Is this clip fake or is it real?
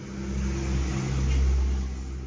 real